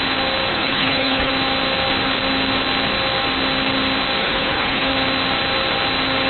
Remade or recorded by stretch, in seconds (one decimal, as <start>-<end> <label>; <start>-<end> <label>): 0.0-0.5 recorded; 0.5-1.3 remade; 1.3-4.2 recorded; 4.2-4.9 remade; 4.9-6.3 recorded

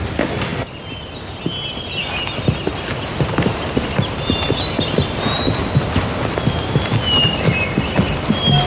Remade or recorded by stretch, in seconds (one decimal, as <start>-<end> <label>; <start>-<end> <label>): 0.0-8.7 recorded

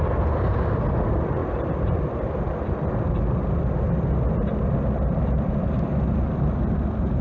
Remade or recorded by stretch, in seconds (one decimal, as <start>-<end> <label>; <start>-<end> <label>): 0.0-7.2 recorded

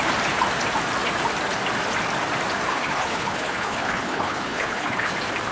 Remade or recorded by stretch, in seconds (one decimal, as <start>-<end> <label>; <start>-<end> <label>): 0.0-2.7 recorded; 2.7-5.1 remade; 5.1-5.5 recorded

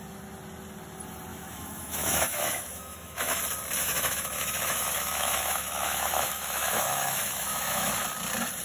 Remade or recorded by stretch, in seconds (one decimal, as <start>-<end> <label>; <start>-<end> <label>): 0.0-1.3 recorded; 1.3-3.4 remade; 3.4-3.8 recorded; 3.8-7.9 remade; 7.9-8.6 recorded

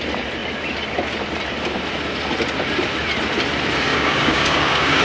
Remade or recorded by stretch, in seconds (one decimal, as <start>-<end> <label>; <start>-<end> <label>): 0.0-3.9 recorded; 3.9-5.0 remade